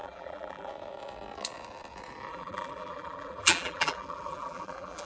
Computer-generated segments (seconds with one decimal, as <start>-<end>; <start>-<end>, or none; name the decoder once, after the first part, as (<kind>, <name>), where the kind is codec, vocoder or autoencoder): 0.0-0.7 (vocoder, BigVGAN v2); 2.3-5.1

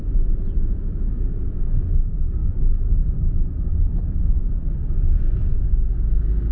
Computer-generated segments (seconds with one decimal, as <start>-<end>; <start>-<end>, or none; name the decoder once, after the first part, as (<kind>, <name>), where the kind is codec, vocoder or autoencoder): 0.0-4.4 (vocoder, BigVGAN v2)

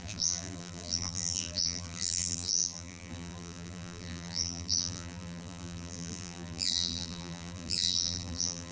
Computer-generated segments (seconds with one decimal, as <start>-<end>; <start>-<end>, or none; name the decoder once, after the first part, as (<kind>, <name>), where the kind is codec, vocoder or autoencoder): 0.0-8.7 (vocoder, BigVGAN v2)

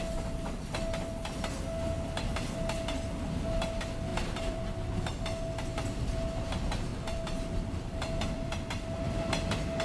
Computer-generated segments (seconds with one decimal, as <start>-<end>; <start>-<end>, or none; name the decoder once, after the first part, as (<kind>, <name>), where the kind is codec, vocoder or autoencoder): 4.1-4.6 (vocoder, BigVGAN v2); 6.9-9.2